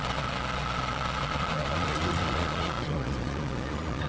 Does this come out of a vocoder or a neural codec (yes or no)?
yes